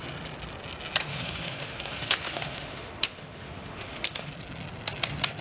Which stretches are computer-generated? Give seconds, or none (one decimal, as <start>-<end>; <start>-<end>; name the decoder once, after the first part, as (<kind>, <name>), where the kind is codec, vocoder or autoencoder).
1.1-4.3 (autoencoder, DAC-VAE)